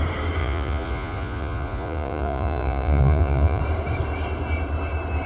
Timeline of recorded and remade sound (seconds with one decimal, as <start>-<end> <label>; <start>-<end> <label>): 0.0-0.4 recorded; 0.4-3.6 remade; 3.6-5.3 recorded